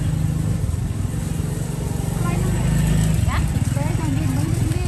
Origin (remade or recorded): recorded